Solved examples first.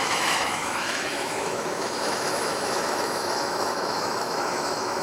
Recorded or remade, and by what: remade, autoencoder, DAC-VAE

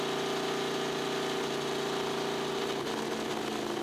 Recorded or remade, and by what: recorded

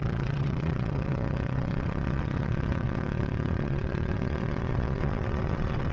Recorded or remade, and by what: remade, vocoder, WaveNeXt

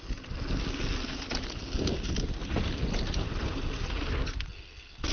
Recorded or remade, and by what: recorded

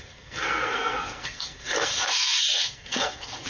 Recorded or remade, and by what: remade, codec, SNAC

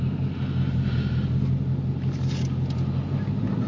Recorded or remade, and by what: recorded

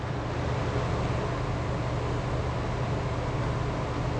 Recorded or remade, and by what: recorded